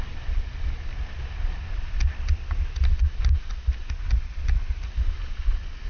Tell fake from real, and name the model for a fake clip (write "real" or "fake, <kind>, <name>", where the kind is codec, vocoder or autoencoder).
real